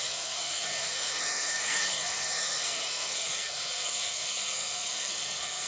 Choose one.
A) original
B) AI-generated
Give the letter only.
B